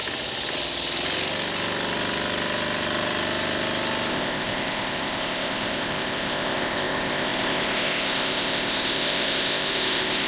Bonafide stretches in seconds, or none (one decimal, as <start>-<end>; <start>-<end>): 0.0-4.1